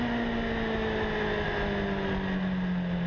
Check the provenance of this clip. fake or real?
real